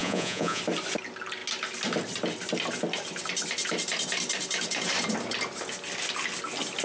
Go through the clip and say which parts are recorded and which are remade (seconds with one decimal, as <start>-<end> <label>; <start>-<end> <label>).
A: 0.0-0.6 remade; 0.6-6.8 recorded